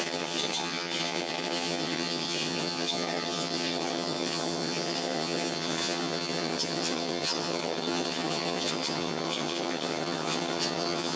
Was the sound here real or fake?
fake